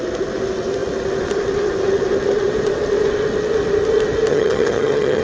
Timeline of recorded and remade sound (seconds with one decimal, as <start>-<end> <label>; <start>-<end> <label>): 0.0-4.3 recorded; 4.3-5.2 remade